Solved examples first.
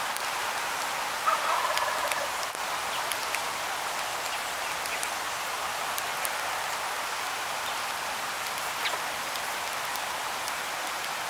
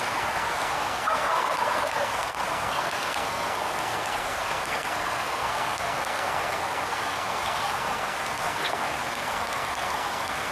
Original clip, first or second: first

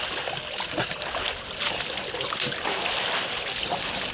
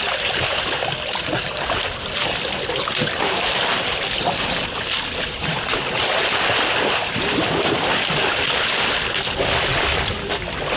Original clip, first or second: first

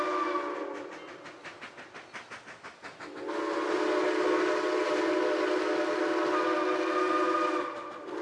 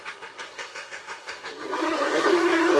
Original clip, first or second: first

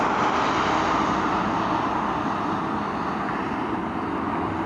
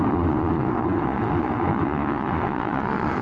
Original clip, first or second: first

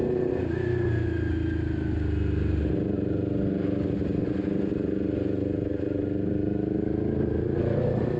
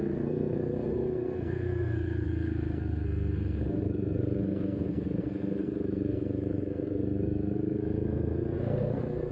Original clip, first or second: first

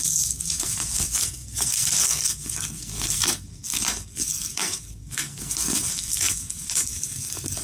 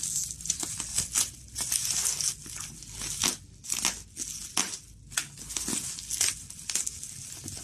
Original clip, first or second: second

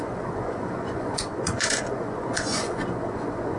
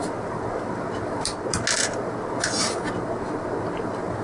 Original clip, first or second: second